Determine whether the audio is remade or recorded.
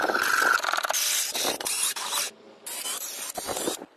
recorded